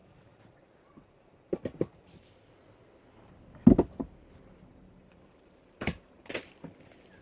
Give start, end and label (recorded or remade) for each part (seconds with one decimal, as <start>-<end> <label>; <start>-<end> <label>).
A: 0.0-2.3 remade; 2.3-4.7 recorded; 4.7-6.3 remade; 6.3-7.2 recorded